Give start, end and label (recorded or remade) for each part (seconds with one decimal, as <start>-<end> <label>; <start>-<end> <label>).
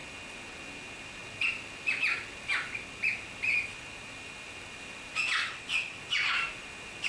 0.0-5.4 recorded; 5.4-6.0 remade; 6.0-7.1 recorded